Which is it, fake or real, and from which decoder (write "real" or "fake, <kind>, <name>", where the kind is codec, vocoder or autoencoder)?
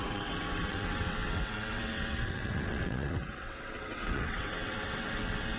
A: fake, vocoder, WaveNeXt